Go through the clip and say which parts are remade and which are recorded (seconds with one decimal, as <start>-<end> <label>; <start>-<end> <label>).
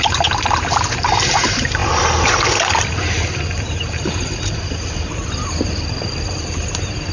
0.0-1.8 recorded; 1.8-6.0 remade; 6.0-7.1 recorded